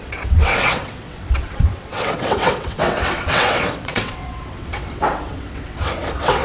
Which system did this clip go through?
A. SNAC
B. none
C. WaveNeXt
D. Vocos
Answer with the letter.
C